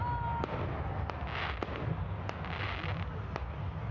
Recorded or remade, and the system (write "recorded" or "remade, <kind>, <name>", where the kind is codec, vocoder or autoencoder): recorded